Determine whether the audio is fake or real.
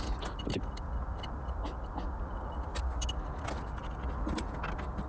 real